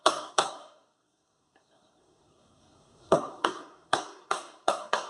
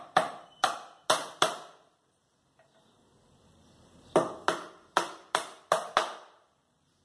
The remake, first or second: first